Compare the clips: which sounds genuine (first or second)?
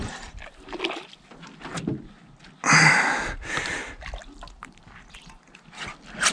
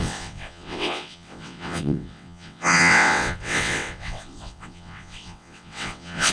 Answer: first